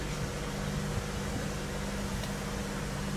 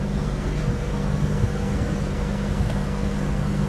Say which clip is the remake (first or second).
second